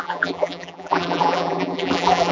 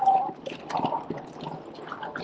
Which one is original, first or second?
second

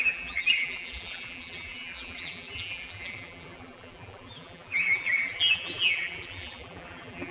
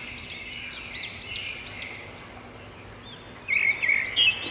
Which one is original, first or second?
second